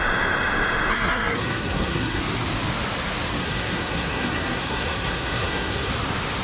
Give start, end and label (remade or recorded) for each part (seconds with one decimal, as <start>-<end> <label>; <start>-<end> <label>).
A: 0.0-0.9 recorded; 0.9-2.2 remade; 2.2-3.4 recorded; 3.4-5.9 remade; 5.9-6.4 recorded